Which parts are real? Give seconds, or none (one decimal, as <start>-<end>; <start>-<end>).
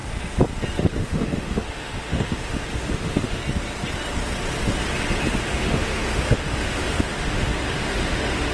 0.0-0.8; 3.4-5.3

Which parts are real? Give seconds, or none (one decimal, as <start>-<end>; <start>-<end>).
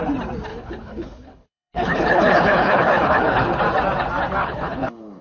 0.0-0.5; 3.6-4.4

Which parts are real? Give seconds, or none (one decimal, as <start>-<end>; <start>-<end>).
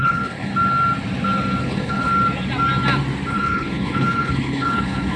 0.5-1.6; 2.1-3.3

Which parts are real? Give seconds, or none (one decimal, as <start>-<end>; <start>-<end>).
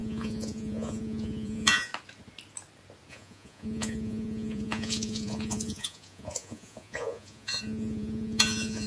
1.9-3.1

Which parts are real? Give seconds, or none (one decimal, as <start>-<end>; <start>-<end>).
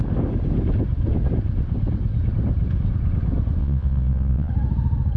0.0-3.6; 4.5-5.2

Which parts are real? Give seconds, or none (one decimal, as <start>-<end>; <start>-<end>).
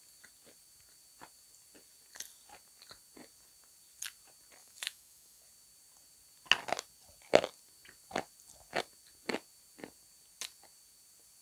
0.0-4.6; 5.4-11.4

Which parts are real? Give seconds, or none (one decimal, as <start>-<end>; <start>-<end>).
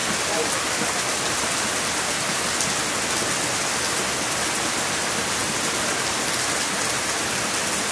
0.0-7.9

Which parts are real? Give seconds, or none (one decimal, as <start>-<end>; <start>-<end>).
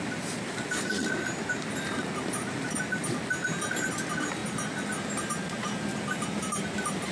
0.0-7.1